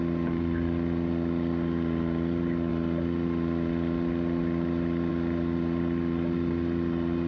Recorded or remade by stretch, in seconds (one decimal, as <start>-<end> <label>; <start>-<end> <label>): 0.0-7.3 recorded